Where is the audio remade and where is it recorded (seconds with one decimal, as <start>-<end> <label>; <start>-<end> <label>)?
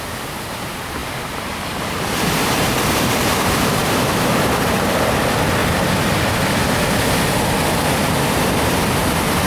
0.0-1.0 remade; 1.0-3.0 recorded; 3.0-5.6 remade; 5.6-9.5 recorded